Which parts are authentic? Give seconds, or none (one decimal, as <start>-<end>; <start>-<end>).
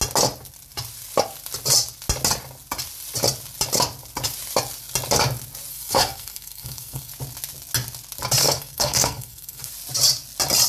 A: 0.0-5.7; 7.1-8.4; 9.7-10.7